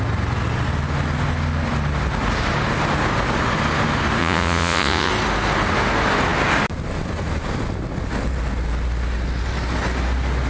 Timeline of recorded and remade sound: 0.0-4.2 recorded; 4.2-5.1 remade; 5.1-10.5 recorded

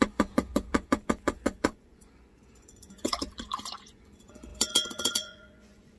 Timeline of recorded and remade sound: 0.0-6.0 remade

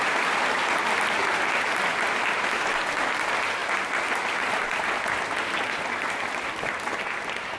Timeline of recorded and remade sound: 0.0-7.6 recorded

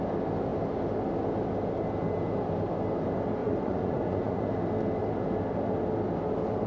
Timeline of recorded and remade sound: 0.0-3.4 recorded; 3.4-4.5 remade; 4.5-6.7 recorded

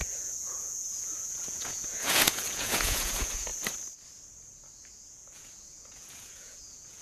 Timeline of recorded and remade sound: 0.0-3.5 remade; 3.5-5.1 recorded; 5.1-7.0 remade

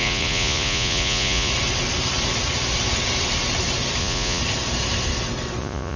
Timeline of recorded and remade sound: 0.0-1.5 remade; 1.5-4.0 recorded; 4.0-4.4 remade; 4.4-5.6 recorded; 5.6-6.0 remade

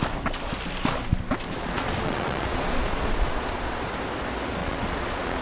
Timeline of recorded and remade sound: 0.0-1.6 recorded; 1.6-3.9 remade; 3.9-4.6 recorded; 4.6-5.4 remade

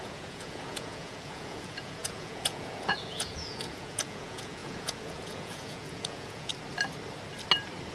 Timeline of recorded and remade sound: 0.0-6.5 remade; 6.5-7.9 recorded